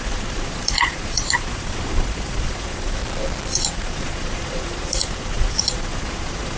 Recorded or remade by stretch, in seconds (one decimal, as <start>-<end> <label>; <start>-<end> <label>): 0.0-3.0 remade; 3.0-3.7 recorded; 3.7-6.6 remade